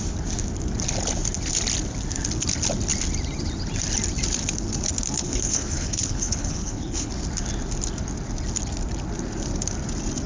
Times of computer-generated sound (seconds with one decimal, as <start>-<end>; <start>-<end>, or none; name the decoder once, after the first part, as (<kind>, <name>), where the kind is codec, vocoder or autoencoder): 5.2-7.1 (codec, HILCodec)

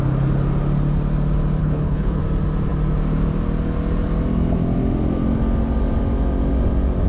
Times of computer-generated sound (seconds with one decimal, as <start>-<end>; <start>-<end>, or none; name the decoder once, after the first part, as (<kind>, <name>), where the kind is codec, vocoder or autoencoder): 1.6-2.2 (codec, HILCodec)

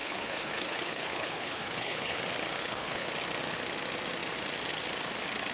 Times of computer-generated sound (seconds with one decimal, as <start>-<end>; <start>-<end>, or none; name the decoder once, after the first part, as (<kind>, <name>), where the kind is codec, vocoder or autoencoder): 0.0-2.2 (codec, HILCodec); 2.6-3.1

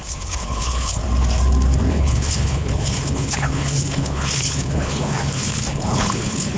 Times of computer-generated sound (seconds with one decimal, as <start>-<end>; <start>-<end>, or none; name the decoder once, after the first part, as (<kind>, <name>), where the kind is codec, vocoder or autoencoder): 0.0-1.0 (codec, HILCodec); 1.9-6.6

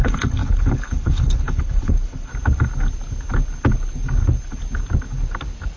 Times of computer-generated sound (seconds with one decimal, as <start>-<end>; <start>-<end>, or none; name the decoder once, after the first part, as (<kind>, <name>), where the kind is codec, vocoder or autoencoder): 0.0-2.3 (codec, HILCodec)

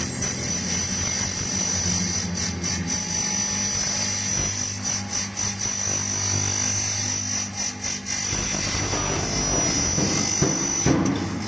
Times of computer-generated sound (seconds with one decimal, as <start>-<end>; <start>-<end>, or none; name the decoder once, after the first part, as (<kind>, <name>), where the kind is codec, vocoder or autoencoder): none

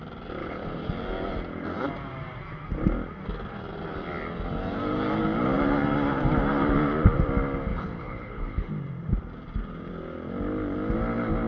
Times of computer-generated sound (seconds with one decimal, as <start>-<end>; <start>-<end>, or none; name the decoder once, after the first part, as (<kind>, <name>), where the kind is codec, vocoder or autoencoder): 0.4-0.9 (codec, HILCodec); 7.7-8.7

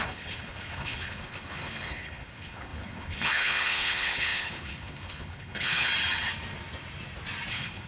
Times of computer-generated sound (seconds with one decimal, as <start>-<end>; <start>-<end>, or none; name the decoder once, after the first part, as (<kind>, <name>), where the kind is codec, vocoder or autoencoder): 0.0-5.9 (codec, HILCodec); 7.5-7.9